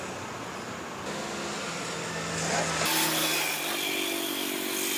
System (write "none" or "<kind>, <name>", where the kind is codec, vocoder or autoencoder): none